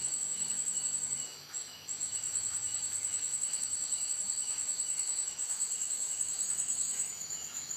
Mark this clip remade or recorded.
remade